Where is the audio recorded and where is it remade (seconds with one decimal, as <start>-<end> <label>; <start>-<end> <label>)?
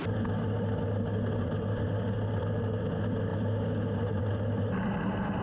0.0-5.4 recorded